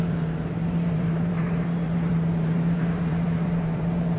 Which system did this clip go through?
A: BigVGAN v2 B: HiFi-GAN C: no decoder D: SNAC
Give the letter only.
A